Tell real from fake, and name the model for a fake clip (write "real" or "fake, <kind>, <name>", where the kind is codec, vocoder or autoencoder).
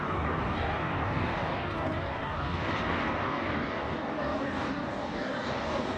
fake, codec, DAC